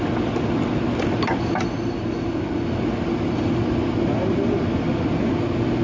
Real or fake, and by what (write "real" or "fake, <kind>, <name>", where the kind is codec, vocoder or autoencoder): real